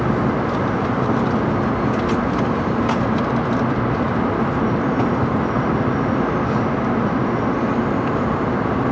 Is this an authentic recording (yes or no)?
yes